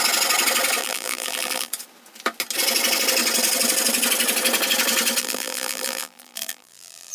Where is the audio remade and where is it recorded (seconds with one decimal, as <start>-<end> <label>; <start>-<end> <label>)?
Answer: 0.0-0.8 recorded; 0.8-1.7 remade; 1.7-5.2 recorded; 5.2-7.1 remade